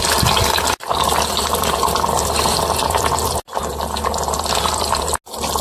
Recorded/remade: recorded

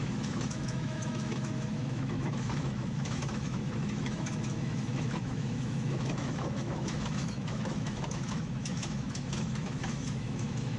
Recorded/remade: remade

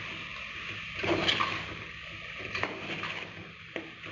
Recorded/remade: recorded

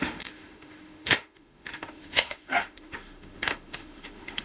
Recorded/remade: remade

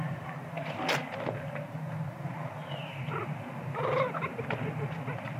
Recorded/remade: recorded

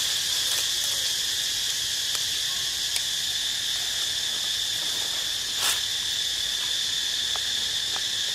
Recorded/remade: recorded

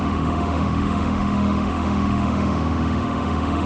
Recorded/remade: remade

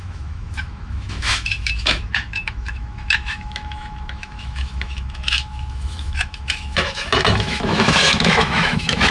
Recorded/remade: remade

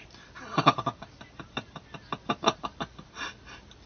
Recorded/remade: recorded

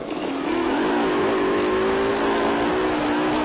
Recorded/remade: remade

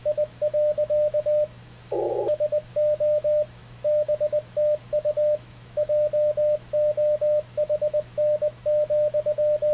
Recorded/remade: remade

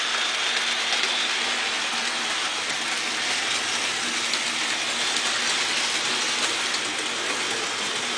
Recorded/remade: recorded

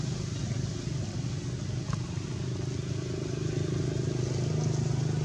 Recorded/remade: recorded